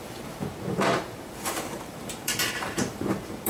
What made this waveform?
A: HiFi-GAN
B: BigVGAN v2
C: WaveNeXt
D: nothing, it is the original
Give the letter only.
B